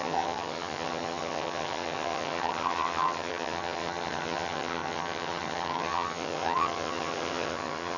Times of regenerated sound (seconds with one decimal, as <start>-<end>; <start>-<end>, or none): 0.0-8.0